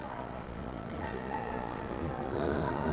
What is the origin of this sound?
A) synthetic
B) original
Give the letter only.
A